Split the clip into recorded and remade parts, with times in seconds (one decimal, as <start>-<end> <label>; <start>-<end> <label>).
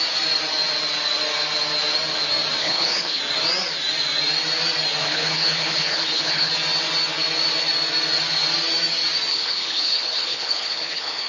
0.0-2.6 recorded; 2.6-3.2 remade; 3.2-5.0 recorded; 5.0-6.5 remade; 6.5-9.3 recorded; 9.3-11.3 remade